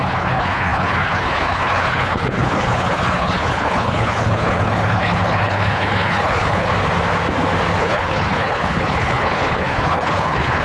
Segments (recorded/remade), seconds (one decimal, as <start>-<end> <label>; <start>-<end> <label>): 0.0-6.7 remade; 6.7-7.8 recorded; 7.8-10.6 remade